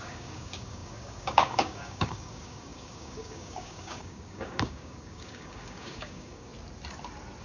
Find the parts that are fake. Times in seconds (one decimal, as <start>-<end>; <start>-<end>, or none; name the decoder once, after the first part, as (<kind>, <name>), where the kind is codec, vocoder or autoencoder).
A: 0.0-6.5 (codec, DAC)